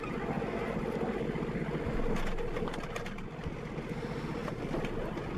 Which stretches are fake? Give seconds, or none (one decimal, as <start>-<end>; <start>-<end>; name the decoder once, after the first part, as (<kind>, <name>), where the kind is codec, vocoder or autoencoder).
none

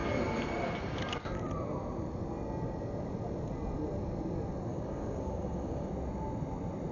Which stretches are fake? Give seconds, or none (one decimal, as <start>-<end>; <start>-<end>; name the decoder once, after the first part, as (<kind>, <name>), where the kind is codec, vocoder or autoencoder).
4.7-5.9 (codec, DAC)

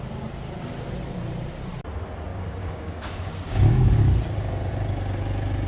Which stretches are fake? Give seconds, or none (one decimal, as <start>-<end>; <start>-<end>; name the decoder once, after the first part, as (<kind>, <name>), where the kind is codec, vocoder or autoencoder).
2.3-4.0 (codec, DAC)

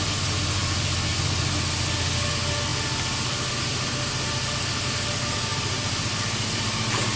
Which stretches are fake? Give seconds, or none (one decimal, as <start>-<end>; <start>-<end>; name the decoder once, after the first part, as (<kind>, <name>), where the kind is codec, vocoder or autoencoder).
none

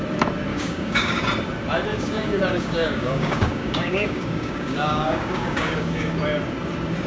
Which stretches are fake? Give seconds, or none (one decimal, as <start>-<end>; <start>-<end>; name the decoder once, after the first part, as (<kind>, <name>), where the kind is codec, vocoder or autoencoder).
0.5-1.2 (codec, DAC); 1.9-6.2

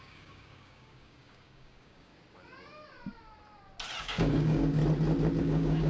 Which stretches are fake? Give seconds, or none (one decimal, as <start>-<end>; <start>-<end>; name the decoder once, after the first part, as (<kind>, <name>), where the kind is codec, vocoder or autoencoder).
0.0-2.1 (codec, DAC); 4.0-4.8; 5.4-5.9

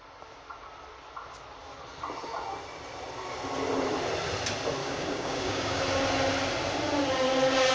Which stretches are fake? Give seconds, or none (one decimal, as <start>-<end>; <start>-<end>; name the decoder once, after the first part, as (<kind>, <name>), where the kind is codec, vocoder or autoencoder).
4.8-5.8 (codec, DAC)

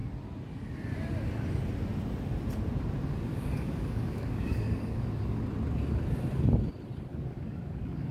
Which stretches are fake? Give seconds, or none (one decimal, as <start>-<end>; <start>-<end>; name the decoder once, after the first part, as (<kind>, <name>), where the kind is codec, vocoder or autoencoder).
3.3-5.4 (codec, DAC); 7.1-8.1